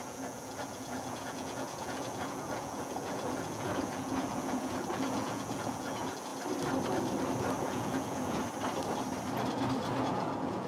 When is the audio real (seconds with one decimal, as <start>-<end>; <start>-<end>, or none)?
6.3-7.6; 8.4-10.0